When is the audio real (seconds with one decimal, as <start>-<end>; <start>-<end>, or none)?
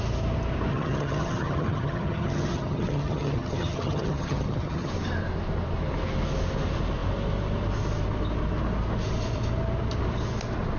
0.0-0.7; 4.9-10.8